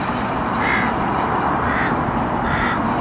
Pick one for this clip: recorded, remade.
recorded